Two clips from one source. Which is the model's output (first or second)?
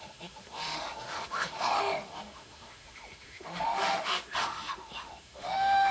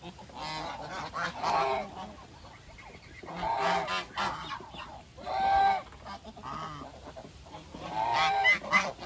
first